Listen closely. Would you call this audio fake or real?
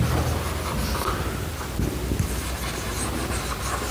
real